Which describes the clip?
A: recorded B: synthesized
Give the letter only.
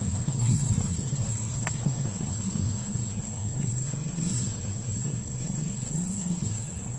B